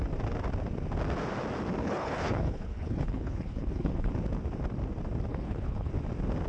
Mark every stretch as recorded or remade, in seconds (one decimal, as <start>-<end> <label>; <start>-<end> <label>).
0.0-1.8 recorded; 1.8-4.1 remade; 4.1-5.3 recorded; 5.3-5.9 remade; 5.9-6.5 recorded